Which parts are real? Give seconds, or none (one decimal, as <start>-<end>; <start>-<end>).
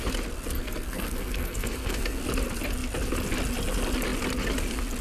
0.0-0.6; 2.2-5.0